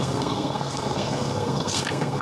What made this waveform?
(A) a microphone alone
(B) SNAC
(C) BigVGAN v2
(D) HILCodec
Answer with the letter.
B